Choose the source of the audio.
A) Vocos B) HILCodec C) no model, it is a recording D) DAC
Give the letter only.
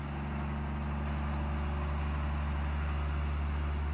C